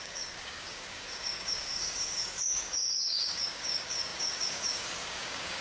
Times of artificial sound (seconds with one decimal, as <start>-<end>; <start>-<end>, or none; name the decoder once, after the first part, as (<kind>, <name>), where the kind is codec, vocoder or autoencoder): 0.0-5.6 (codec, DAC)